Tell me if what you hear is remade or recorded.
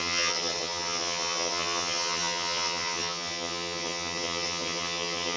remade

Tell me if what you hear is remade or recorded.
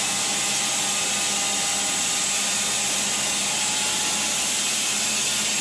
recorded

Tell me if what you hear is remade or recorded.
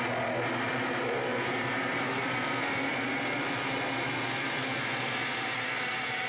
recorded